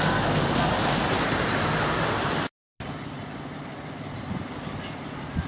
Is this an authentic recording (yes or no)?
yes